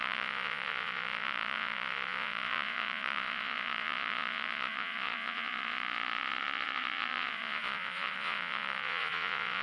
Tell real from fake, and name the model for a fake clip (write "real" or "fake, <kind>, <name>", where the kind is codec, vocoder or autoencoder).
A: fake, vocoder, Vocos